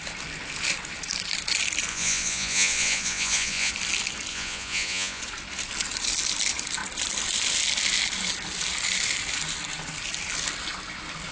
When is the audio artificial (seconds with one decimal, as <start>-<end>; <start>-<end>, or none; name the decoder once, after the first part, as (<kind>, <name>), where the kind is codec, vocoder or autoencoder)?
1.9-3.7 (vocoder, Vocos); 4.3-5.2